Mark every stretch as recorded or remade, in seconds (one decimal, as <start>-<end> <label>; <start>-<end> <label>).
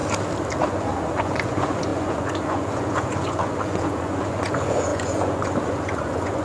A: 0.0-0.6 recorded; 0.6-6.4 remade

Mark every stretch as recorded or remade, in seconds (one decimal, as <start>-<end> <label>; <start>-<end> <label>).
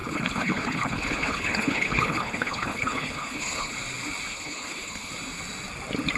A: 0.0-3.7 remade; 3.7-4.3 recorded; 4.3-5.1 remade; 5.1-6.2 recorded